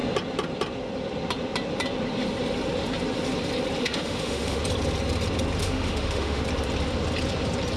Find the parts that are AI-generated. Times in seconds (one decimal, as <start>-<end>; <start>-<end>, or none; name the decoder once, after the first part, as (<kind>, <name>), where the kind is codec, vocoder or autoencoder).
3.8-4.6 (autoencoder, DAC-VAE); 5.6-6.4